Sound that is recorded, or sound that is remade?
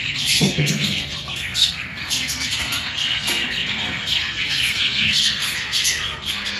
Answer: remade